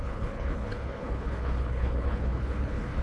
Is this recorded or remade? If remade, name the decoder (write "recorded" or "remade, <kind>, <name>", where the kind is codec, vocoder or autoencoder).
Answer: remade, codec, HILCodec